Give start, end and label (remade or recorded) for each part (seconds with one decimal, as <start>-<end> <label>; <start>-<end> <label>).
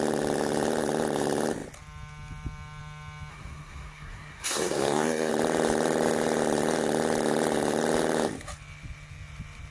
0.0-3.3 recorded; 3.3-5.3 remade; 5.3-9.7 recorded